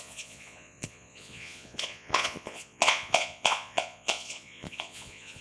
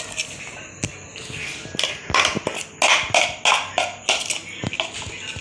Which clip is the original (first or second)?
second